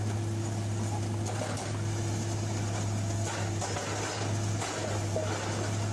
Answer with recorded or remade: recorded